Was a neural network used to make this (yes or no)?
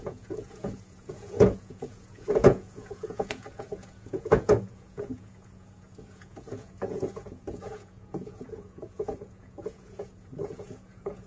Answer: yes